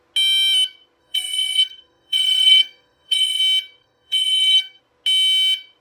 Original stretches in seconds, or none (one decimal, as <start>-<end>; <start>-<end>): 0.0-1.0; 3.4-3.8; 4.8-5.8